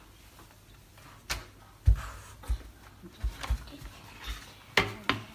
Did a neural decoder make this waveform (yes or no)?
no